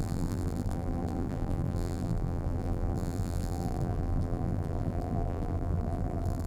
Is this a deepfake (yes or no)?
yes